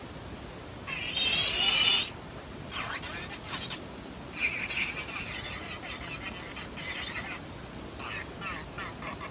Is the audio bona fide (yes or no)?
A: yes